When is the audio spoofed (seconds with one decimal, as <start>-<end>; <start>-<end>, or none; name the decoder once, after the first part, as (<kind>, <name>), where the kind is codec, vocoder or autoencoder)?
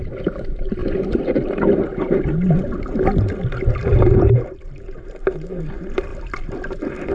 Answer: 0.0-0.8 (vocoder, BigVGAN v2); 3.6-6.1